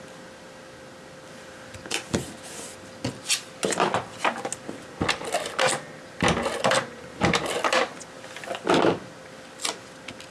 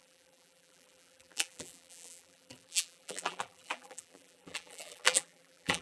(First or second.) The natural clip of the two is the first